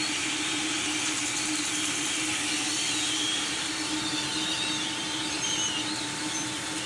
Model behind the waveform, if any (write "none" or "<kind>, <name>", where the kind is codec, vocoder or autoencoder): none